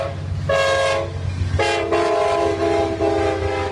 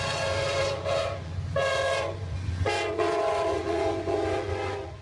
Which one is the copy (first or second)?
second